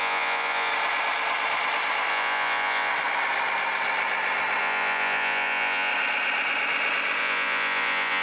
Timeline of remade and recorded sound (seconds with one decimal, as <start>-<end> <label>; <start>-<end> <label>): 0.0-0.7 remade; 0.7-2.1 recorded; 2.1-2.9 remade; 2.9-4.6 recorded; 4.6-5.9 remade; 5.9-7.2 recorded; 7.2-8.2 remade